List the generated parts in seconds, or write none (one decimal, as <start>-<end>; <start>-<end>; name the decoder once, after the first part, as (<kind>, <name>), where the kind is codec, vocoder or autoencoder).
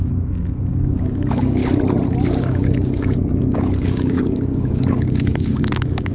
0.0-1.6 (codec, DAC); 2.3-6.1